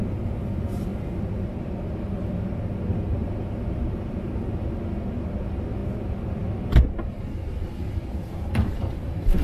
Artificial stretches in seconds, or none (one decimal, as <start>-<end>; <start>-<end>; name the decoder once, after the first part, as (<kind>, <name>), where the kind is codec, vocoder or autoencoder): 3.2-4.7 (vocoder, BigVGAN v2)

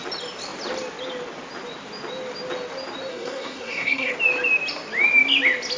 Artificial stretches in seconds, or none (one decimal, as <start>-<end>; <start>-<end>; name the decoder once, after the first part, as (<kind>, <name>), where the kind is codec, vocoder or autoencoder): 3.1-4.1 (codec, SNAC)

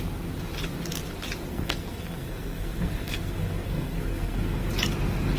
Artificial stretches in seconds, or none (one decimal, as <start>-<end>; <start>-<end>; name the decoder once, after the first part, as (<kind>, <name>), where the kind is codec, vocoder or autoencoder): 1.5-4.7 (codec, SNAC)

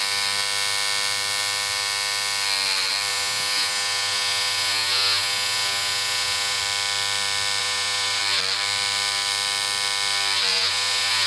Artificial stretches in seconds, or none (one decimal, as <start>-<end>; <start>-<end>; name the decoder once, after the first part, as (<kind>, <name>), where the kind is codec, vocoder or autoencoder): 3.1-6.6 (vocoder, Vocos); 7.6-8.2; 10.5-11.3